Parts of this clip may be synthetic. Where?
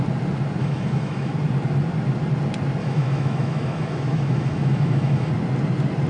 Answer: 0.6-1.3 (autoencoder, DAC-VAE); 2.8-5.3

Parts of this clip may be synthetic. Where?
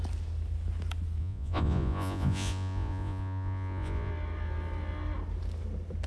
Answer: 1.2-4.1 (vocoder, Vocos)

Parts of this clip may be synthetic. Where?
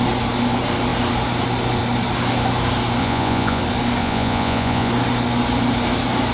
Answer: 3.0-3.6 (vocoder, Vocos); 4.0-4.9